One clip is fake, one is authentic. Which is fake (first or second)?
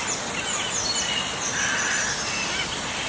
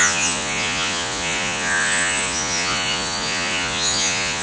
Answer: second